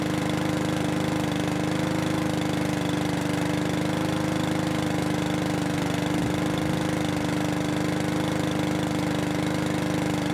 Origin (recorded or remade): recorded